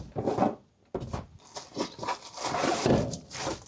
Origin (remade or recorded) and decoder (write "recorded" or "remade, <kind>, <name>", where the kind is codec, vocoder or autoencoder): recorded